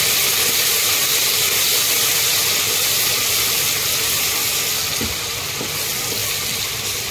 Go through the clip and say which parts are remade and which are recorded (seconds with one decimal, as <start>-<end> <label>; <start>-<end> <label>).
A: 0.0-7.1 recorded